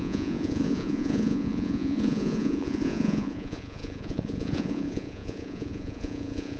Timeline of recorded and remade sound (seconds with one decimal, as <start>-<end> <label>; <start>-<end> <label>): 0.0-6.6 remade